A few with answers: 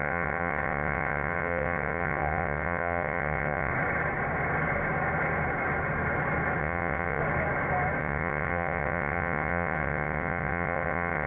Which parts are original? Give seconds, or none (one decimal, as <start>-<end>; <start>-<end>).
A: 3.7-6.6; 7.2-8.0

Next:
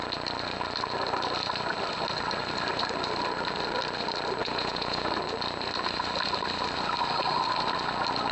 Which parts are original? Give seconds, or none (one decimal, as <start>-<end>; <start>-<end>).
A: 0.0-4.4; 5.1-8.3

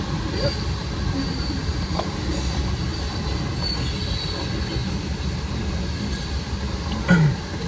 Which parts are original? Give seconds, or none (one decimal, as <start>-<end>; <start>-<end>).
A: 0.0-7.7

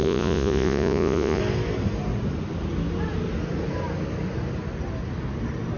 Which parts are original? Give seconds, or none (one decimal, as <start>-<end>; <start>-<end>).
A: 1.4-5.8

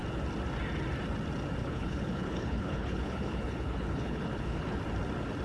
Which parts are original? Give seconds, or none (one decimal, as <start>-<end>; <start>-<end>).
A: 0.0-1.6; 4.8-5.4